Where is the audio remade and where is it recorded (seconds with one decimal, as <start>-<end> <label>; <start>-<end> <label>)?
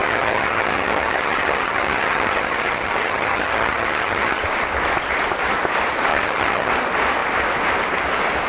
0.0-4.4 remade; 4.4-6.1 recorded; 6.1-6.7 remade; 6.7-8.5 recorded